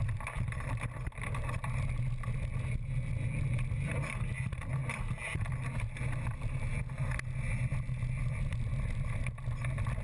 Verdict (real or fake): real